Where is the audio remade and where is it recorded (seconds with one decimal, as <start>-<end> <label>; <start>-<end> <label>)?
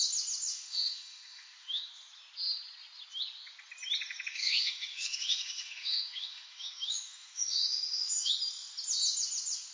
0.0-0.5 recorded; 0.5-1.9 remade; 1.9-4.3 recorded; 4.3-8.3 remade; 8.3-9.7 recorded